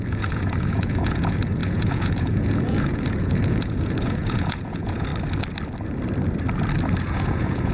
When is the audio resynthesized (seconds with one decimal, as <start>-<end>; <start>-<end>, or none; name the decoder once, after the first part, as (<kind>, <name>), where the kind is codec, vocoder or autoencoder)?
0.0-5.1 (vocoder, Vocos); 7.0-7.7